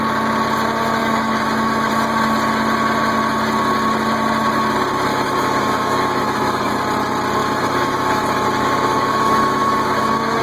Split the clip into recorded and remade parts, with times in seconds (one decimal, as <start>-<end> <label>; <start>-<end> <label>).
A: 0.0-1.0 recorded; 1.0-1.9 remade; 1.9-5.1 recorded; 5.1-6.7 remade; 6.7-7.4 recorded; 7.4-10.4 remade